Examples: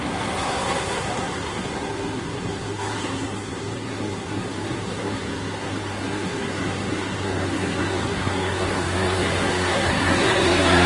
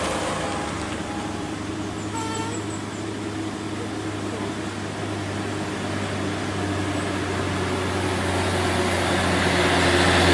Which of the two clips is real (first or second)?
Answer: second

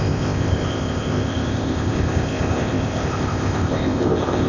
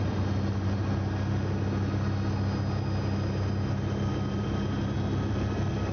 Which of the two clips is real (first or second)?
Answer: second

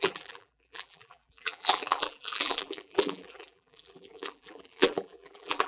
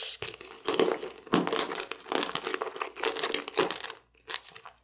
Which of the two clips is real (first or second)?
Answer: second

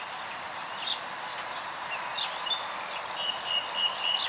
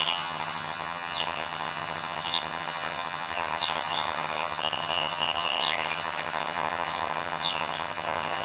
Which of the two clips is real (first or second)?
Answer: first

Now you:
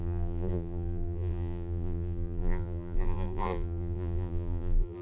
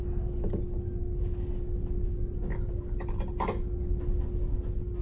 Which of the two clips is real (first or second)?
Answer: second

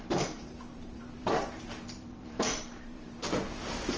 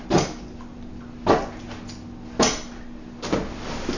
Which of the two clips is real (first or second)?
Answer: second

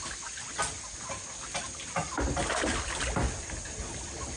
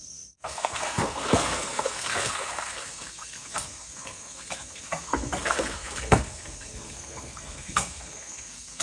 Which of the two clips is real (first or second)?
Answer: first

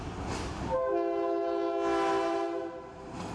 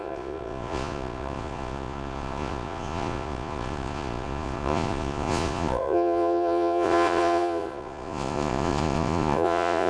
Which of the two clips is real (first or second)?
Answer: first